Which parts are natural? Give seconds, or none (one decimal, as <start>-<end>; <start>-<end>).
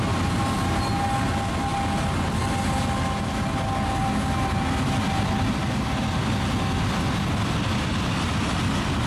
0.0-9.1